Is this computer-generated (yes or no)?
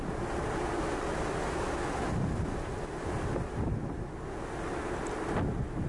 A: no